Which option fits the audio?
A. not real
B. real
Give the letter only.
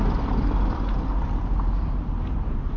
B